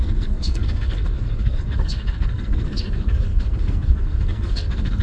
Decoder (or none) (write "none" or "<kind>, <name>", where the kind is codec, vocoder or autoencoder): codec, SNAC